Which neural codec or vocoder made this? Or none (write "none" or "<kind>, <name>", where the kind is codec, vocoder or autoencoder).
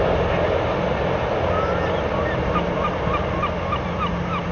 none